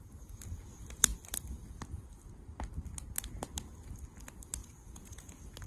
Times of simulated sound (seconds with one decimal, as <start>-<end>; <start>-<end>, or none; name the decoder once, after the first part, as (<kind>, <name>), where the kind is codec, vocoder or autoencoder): 4.6-5.3 (vocoder, Vocos)